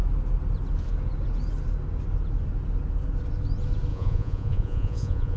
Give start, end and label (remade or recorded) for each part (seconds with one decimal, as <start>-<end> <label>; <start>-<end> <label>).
0.0-3.9 recorded; 3.9-5.4 remade